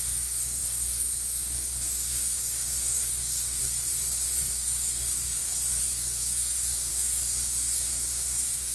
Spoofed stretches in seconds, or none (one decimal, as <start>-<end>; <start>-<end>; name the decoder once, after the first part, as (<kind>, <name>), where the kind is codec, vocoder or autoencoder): 0.0-8.7 (codec, DAC)